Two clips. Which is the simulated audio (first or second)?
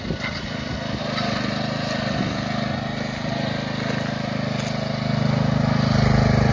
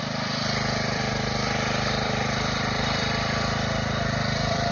second